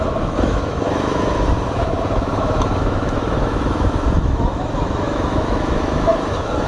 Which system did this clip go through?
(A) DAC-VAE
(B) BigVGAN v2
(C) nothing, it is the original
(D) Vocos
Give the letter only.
A